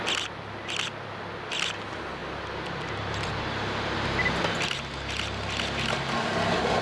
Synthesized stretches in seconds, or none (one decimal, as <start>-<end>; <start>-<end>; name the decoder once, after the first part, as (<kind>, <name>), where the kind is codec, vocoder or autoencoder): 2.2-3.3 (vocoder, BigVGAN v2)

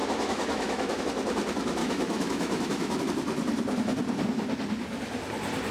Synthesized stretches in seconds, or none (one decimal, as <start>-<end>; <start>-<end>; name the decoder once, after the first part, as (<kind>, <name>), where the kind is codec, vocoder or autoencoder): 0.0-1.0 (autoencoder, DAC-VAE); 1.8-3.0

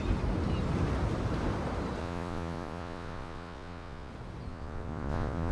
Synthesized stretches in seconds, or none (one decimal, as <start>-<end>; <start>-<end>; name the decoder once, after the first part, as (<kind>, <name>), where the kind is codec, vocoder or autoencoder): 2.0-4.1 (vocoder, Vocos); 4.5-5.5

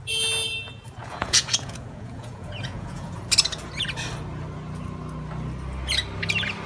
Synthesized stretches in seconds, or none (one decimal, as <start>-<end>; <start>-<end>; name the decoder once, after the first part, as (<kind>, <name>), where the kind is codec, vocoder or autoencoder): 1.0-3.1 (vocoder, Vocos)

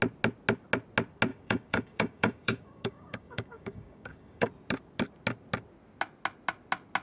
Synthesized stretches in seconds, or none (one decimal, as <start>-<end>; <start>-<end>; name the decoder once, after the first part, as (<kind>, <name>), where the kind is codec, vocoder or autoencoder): 1.3-4.5 (codec, DAC)

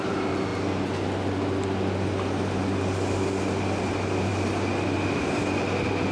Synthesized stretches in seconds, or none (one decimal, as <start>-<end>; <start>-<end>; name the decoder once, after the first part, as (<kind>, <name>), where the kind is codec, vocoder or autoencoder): none

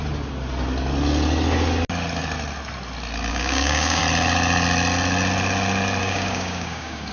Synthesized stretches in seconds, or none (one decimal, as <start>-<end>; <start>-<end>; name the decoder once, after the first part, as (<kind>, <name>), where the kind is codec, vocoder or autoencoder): 3.3-4.0 (codec, DAC); 6.0-7.1